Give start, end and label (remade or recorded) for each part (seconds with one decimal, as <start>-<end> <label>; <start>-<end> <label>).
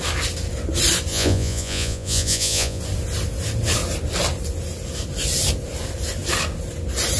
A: 0.0-1.1 recorded; 1.1-2.8 remade; 2.8-7.2 recorded